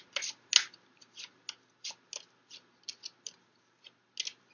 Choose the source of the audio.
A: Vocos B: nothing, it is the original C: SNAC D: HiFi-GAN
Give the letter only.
B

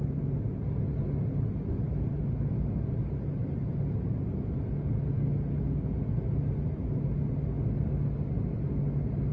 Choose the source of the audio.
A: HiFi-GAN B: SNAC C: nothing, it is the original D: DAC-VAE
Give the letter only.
C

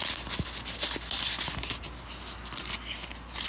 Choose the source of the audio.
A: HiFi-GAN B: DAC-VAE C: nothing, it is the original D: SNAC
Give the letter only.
C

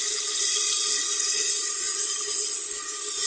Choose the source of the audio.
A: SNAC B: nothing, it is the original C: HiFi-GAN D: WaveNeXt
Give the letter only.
B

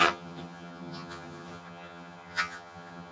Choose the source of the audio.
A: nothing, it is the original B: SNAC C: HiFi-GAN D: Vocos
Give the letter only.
C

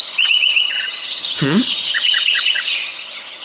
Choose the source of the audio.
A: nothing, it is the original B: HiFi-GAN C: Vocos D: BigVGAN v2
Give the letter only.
B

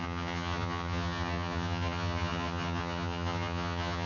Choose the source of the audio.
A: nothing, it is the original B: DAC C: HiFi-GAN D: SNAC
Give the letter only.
C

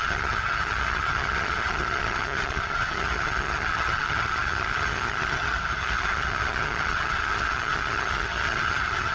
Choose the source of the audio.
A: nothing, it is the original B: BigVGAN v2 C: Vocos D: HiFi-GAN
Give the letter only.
D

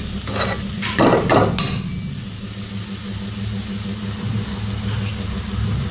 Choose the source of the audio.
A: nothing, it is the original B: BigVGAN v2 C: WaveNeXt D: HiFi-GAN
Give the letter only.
A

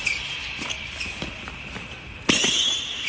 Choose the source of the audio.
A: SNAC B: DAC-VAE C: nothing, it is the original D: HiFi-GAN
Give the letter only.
C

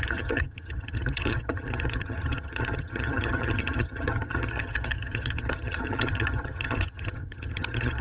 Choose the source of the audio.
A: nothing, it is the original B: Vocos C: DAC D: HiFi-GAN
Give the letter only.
D